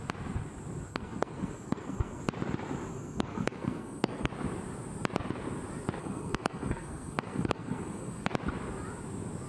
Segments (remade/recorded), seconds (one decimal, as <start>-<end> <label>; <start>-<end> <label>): 0.0-0.9 recorded; 0.9-2.2 remade; 2.2-2.9 recorded; 2.9-4.3 remade; 4.3-6.0 recorded; 6.0-8.3 remade; 8.3-9.5 recorded